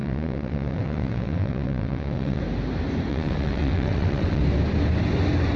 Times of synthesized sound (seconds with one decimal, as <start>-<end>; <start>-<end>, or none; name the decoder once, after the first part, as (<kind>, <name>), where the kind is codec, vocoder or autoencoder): 0.0-2.4 (vocoder, WaveNeXt); 3.1-4.4